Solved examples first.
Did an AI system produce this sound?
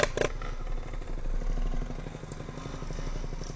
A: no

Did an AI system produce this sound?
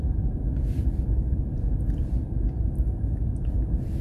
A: yes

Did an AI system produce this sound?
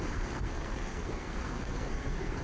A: yes